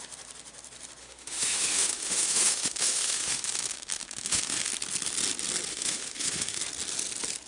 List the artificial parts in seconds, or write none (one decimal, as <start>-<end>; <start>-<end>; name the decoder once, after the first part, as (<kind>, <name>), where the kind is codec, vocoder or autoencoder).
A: 1.0-4.7 (autoencoder, DAC-VAE); 5.7-6.6